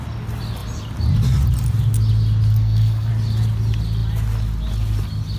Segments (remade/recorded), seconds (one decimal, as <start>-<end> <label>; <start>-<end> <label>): 0.0-2.5 recorded; 2.5-3.1 remade; 3.1-5.4 recorded